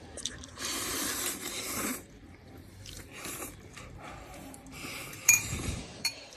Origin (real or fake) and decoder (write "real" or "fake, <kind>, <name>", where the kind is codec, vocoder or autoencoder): fake, vocoder, BigVGAN v2